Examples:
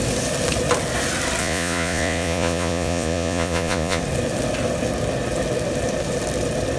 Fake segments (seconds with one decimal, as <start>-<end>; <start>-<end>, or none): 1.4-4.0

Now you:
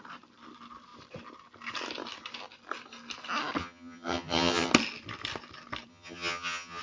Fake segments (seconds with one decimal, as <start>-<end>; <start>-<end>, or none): 3.6-4.7; 5.9-6.8

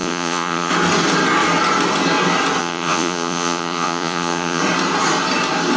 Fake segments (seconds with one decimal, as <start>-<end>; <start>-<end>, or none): 0.0-0.7; 2.6-4.6

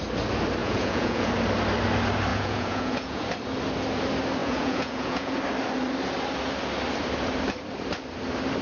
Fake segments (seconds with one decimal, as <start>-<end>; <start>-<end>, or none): 0.6-1.3; 2.3-3.2; 4.4-5.3

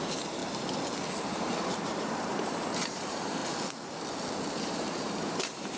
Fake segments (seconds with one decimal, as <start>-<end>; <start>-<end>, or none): 0.0-0.4; 1.3-3.4; 4.6-5.8

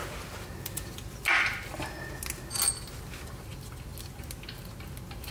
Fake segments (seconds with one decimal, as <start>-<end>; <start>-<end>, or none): none

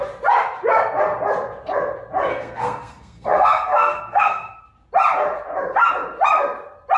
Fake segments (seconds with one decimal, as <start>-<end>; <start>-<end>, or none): 2.3-4.6